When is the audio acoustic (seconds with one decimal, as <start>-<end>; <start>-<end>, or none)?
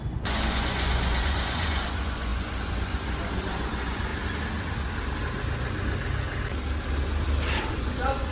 4.1-7.7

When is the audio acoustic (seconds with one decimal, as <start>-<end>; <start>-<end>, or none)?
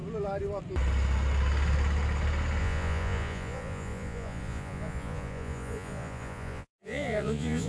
0.0-2.6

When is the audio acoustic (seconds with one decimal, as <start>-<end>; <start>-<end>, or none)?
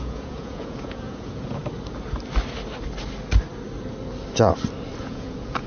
1.6-5.0